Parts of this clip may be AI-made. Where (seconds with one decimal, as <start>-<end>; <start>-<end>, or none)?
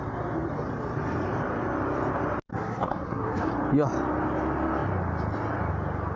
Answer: 2.5-3.5